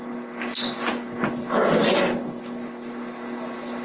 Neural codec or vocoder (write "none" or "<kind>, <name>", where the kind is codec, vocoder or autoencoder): none